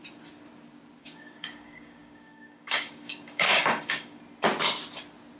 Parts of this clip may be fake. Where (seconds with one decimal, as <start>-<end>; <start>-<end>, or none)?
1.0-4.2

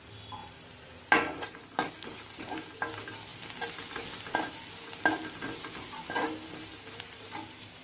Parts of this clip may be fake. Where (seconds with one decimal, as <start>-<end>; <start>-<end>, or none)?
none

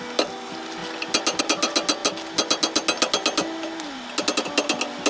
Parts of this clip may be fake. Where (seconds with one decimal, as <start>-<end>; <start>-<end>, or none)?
none